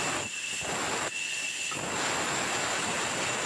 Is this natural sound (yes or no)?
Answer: yes